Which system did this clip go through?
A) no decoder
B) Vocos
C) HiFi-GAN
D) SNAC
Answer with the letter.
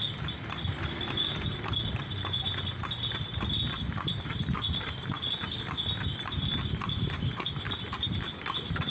A